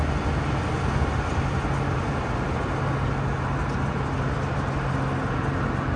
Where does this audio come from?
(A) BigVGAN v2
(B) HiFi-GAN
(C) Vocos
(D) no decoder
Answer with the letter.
D